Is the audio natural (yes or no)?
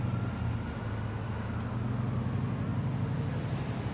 yes